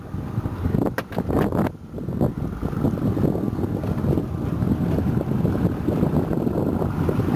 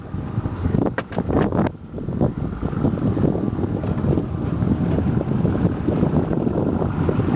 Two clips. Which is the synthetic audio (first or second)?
second